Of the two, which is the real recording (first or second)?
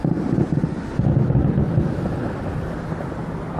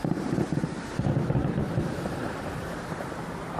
first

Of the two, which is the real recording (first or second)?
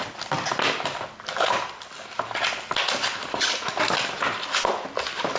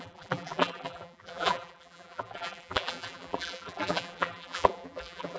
first